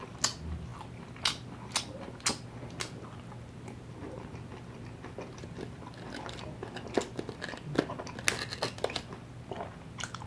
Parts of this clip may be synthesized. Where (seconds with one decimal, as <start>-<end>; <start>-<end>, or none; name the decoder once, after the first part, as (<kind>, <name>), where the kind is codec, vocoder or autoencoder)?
none